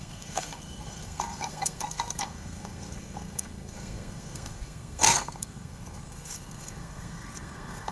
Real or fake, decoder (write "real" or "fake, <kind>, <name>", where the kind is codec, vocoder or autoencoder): fake, codec, SNAC